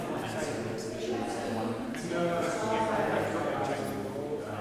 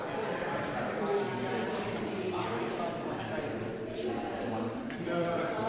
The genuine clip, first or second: first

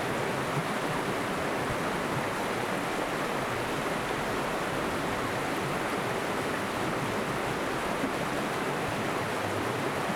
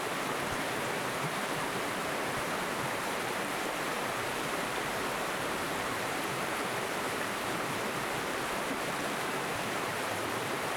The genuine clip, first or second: first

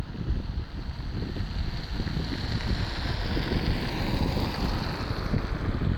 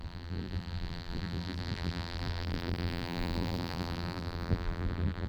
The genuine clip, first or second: first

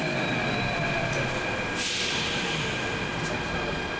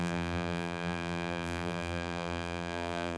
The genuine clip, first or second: first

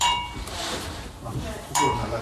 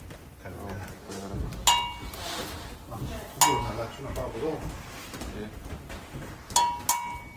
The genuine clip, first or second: second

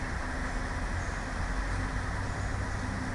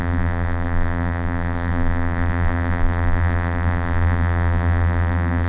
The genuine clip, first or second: first